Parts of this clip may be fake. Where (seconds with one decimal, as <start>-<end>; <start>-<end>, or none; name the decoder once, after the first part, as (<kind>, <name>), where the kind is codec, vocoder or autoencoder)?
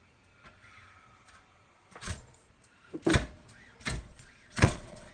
1.5-2.5 (vocoder, Vocos); 4.1-5.1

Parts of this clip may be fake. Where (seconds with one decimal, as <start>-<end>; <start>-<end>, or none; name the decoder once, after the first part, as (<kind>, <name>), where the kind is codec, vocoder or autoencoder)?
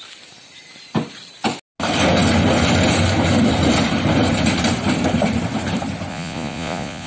6.1-7.1 (vocoder, Vocos)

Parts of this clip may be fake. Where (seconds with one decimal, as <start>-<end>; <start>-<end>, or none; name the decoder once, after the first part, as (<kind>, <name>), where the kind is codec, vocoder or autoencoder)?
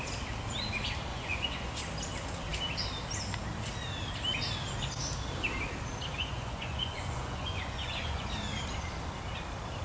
1.1-1.7 (vocoder, Vocos); 6.1-8.3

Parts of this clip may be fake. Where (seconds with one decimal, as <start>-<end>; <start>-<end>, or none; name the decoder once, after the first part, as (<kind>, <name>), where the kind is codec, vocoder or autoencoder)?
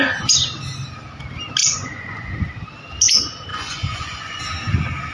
1.6-2.3 (vocoder, Vocos); 3.5-4.4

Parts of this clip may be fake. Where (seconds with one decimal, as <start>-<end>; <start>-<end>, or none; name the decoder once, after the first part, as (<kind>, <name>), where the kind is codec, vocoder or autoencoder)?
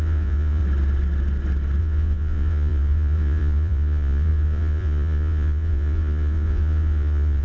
0.0-0.6 (vocoder, Vocos); 1.8-7.4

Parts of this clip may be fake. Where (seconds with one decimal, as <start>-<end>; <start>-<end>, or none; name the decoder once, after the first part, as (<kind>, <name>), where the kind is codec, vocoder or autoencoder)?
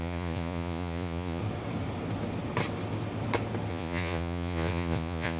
0.0-1.4 (vocoder, Vocos); 3.7-5.4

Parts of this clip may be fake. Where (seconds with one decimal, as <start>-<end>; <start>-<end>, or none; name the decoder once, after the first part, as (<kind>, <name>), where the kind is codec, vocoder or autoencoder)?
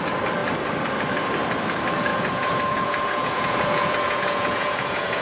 2.1-5.2 (vocoder, Vocos)